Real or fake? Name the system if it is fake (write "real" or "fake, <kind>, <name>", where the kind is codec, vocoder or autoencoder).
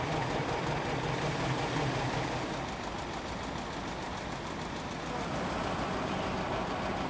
real